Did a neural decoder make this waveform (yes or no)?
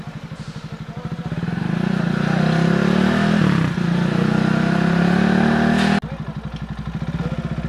no